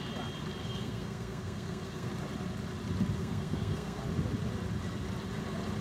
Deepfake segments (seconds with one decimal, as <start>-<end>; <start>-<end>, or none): 0.6-2.1; 3.2-4.0